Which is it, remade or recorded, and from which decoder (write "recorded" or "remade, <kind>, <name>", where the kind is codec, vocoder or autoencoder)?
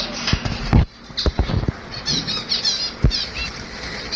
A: recorded